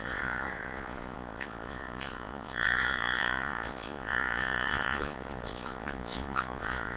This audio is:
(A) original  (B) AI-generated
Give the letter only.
B